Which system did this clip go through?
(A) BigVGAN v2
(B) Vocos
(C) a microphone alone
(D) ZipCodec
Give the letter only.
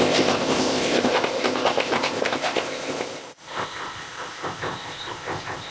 D